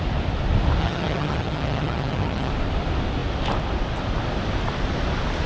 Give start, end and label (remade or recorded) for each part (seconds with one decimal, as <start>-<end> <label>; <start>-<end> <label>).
0.0-0.8 recorded; 0.8-2.5 remade; 2.5-5.5 recorded